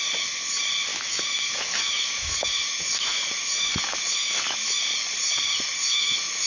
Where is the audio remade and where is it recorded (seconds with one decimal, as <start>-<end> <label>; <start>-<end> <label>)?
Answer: 0.0-0.9 recorded; 0.9-4.8 remade; 4.8-5.9 recorded; 5.9-6.5 remade